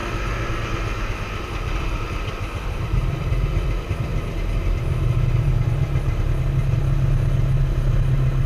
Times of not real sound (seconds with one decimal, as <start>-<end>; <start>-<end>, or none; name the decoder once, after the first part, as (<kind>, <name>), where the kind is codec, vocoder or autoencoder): 1.4-4.1 (vocoder, BigVGAN v2)

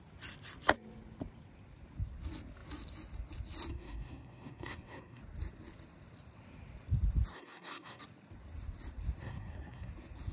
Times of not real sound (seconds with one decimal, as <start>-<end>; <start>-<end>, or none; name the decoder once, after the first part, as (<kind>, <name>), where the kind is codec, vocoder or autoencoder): 3.7-5.2 (codec, SNAC); 7.3-8.0; 9.2-9.9

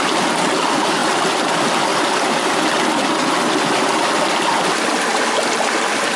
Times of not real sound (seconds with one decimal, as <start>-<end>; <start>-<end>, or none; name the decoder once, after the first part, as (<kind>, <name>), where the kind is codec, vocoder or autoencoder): none

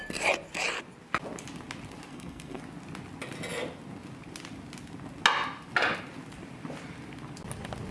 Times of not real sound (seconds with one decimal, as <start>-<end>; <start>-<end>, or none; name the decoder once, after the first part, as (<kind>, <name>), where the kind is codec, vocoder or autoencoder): 2.1-2.6 (codec, SNAC)

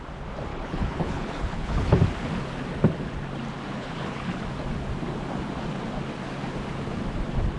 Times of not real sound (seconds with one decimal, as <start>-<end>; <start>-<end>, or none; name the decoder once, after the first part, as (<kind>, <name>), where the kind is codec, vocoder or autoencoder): 0.5-2.0 (codec, HILCodec); 3.8-4.4

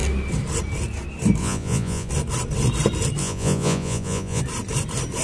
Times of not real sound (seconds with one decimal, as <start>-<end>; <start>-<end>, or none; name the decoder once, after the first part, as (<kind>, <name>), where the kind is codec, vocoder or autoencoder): 1.4-2.1 (vocoder, Vocos); 3.2-4.4